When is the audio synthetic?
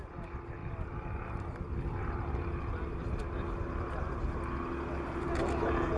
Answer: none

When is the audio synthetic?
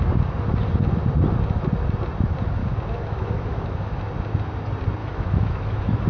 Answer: 2.6-4.0 (autoencoder, DAC-VAE); 5.0-6.1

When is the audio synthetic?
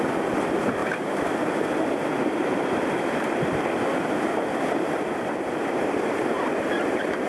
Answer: 0.8-4.4 (vocoder, BigVGAN v2)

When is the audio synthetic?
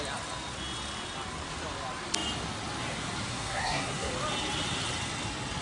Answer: 3.3-4.1 (codec, SNAC)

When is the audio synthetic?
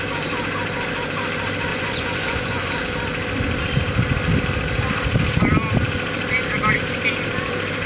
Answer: 1.7-2.7 (vocoder, Vocos)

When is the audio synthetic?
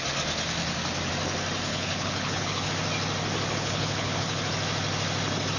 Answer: 1.7-2.7 (codec, HILCodec); 3.5-4.5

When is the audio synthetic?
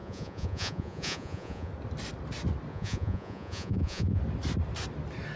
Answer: 0.0-1.7 (vocoder, Vocos); 2.7-4.2